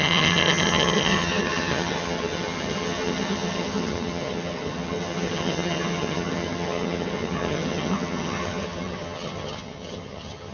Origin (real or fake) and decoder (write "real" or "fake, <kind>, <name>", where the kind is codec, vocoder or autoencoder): fake, vocoder, HiFi-GAN